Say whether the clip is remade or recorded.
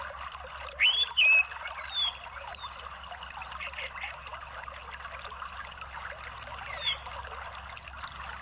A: recorded